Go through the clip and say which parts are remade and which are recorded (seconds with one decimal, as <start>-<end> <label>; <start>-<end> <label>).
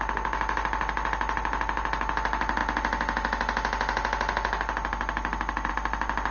0.0-6.3 recorded